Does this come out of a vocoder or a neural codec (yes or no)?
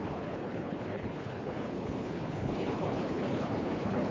yes